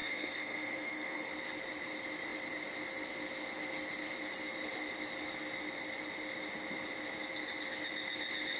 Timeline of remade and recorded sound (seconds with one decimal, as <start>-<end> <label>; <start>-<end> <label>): 0.0-1.3 remade; 1.3-8.6 recorded